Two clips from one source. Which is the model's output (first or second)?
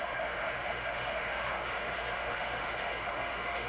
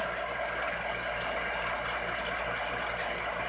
first